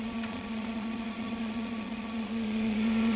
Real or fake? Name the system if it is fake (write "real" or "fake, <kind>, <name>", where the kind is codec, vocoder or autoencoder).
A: fake, vocoder, Vocos